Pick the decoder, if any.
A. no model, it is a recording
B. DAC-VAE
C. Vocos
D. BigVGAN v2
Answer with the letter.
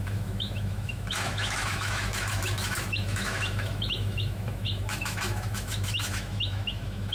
B